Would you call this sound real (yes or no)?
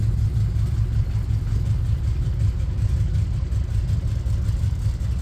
yes